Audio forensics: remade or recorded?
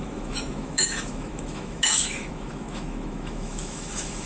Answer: remade